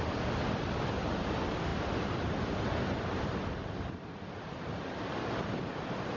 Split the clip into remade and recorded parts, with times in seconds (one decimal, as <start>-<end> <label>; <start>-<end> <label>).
0.0-6.2 recorded

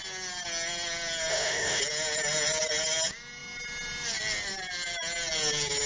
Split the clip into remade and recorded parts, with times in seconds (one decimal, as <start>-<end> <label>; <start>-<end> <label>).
0.0-1.3 recorded; 1.3-1.8 remade; 1.8-5.9 recorded

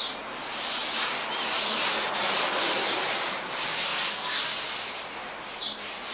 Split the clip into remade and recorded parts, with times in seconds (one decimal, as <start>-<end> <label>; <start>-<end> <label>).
0.0-3.9 remade; 3.9-5.6 recorded; 5.6-6.1 remade

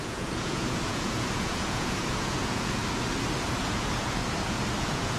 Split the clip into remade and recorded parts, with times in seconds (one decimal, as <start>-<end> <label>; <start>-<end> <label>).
0.0-2.8 remade; 2.8-3.6 recorded; 3.6-4.2 remade; 4.2-4.8 recorded; 4.8-5.2 remade

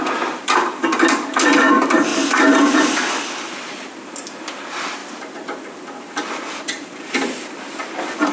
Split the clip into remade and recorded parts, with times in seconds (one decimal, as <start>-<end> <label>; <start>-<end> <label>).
0.0-2.1 remade; 2.1-3.1 recorded; 3.1-5.0 remade; 5.0-6.3 recorded; 6.3-8.3 remade